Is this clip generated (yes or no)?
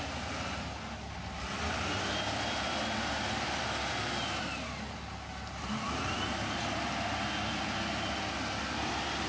no